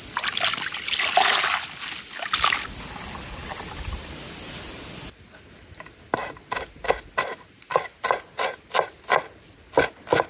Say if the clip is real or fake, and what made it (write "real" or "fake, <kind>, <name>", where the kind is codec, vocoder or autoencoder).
real